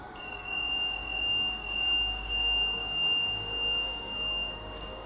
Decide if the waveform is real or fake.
fake